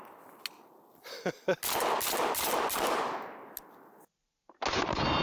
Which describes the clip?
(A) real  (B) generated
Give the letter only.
A